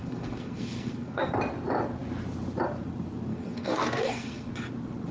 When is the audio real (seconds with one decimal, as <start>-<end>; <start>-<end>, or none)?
1.3-3.3; 4.5-5.1